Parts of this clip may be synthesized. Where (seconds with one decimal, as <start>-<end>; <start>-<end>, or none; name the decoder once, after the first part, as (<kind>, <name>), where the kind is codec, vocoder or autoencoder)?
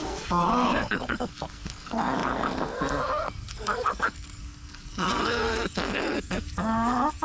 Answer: 0.0-7.2 (codec, SNAC)